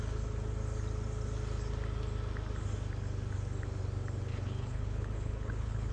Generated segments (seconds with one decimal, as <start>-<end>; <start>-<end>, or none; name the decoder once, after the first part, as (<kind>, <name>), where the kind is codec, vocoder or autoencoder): 4.3-5.9 (codec, HILCodec)